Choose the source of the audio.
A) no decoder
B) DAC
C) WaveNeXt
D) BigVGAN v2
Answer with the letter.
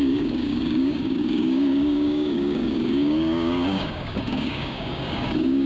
B